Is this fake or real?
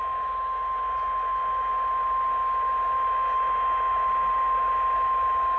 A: real